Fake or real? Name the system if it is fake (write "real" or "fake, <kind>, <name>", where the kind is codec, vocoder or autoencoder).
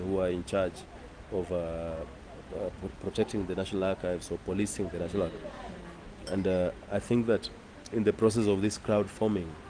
real